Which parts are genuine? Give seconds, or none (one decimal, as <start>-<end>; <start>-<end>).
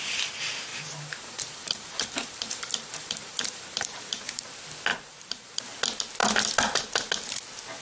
0.0-0.7; 4.5-4.9; 5.6-7.8